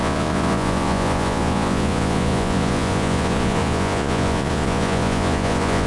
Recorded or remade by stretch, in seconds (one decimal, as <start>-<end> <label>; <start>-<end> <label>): 0.0-5.9 remade